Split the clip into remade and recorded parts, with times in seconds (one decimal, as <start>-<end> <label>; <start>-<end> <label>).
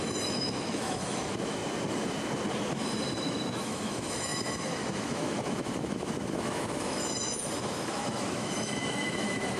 0.0-1.6 remade; 1.6-3.2 recorded; 3.2-9.6 remade